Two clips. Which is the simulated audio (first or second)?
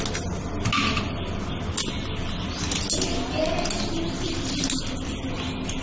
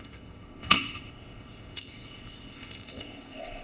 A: second